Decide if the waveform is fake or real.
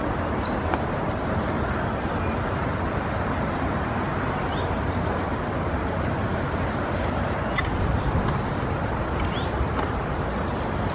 real